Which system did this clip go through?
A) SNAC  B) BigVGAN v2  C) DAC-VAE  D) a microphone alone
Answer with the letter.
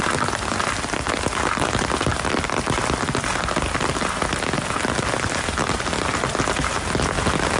D